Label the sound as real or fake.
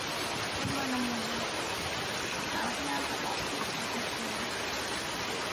real